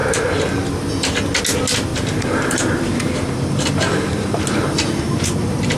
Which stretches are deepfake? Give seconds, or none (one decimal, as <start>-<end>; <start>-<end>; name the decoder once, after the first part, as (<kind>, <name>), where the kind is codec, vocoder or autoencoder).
1.9-5.8 (vocoder, BigVGAN v2)